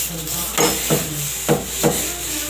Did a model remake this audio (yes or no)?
no